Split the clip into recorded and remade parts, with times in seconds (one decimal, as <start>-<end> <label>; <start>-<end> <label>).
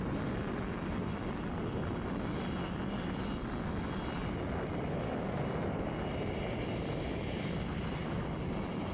0.0-8.9 recorded